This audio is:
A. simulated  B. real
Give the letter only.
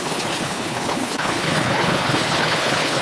A